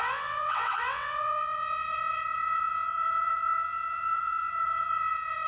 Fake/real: fake